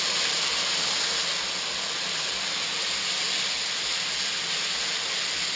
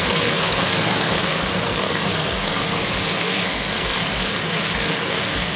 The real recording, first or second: first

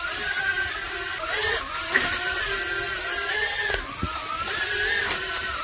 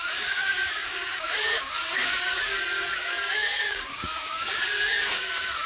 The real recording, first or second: first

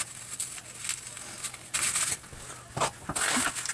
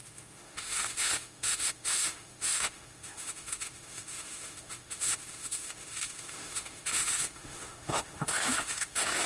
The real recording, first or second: first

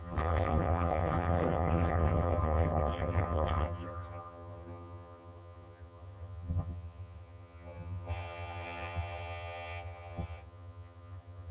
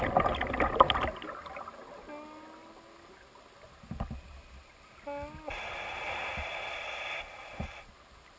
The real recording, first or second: second